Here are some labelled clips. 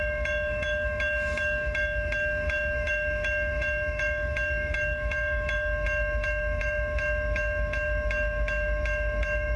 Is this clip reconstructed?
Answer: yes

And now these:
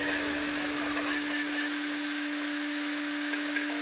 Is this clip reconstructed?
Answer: yes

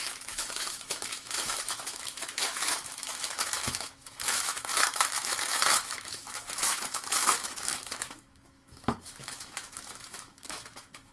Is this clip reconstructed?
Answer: yes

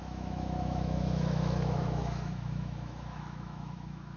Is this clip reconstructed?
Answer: yes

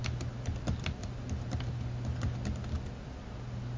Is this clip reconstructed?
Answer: no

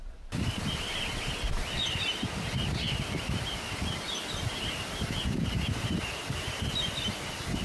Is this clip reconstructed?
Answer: no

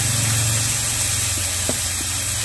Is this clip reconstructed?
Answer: no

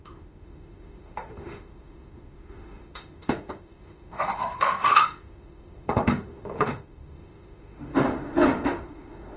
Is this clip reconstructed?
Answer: yes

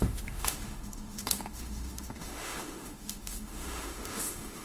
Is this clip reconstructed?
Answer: yes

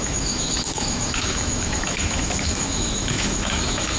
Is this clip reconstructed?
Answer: yes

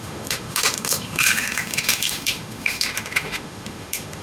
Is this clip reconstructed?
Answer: yes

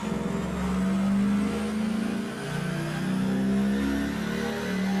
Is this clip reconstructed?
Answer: no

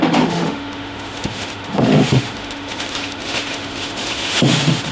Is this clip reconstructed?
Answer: yes